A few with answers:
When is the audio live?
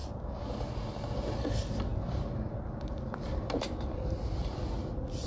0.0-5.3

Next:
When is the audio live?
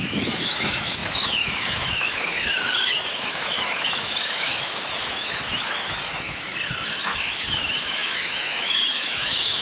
6.5-7.0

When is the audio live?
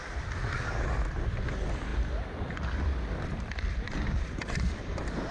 1.3-5.3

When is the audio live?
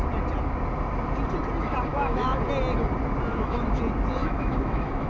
0.0-1.9; 2.4-3.3; 3.8-4.2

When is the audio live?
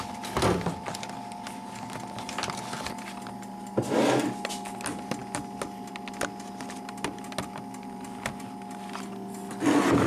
0.0-10.1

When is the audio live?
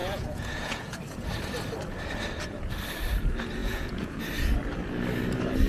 1.0-3.6; 4.2-5.7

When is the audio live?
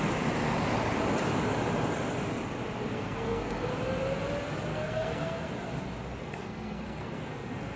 0.0-2.9; 3.7-4.7; 5.5-6.2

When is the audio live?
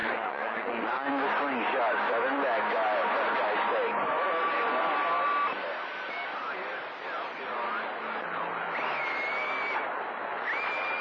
1.1-11.0